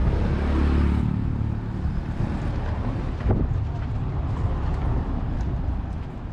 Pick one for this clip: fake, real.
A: real